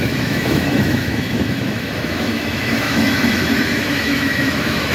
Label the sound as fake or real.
fake